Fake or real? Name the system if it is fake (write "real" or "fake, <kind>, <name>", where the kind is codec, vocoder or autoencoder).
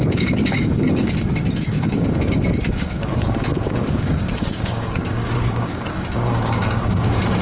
fake, codec, DAC